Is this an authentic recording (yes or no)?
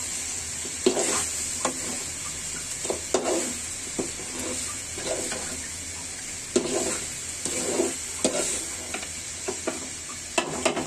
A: yes